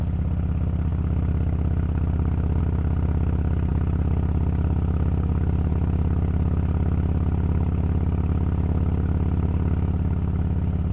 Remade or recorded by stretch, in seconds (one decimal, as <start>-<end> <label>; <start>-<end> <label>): 0.0-10.9 recorded